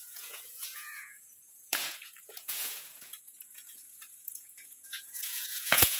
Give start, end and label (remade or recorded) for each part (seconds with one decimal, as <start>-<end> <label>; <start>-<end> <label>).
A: 0.0-6.0 remade